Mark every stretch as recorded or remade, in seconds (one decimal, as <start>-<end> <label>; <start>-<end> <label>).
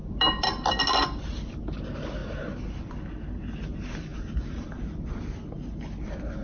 0.0-2.2 recorded; 2.2-2.9 remade; 2.9-4.1 recorded; 4.1-4.8 remade; 4.8-6.4 recorded